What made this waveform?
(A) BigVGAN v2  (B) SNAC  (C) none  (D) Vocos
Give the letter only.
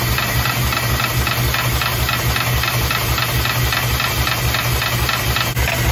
C